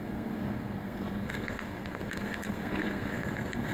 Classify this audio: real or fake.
fake